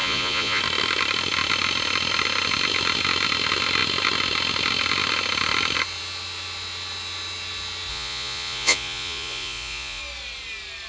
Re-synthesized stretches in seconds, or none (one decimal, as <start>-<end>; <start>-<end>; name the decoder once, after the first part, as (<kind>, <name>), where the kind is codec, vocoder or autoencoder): 0.0-0.6 (vocoder, Vocos); 7.9-10.0